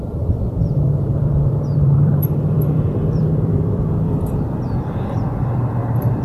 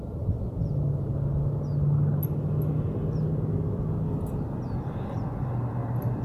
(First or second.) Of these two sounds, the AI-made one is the first